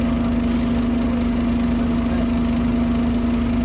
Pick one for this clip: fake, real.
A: real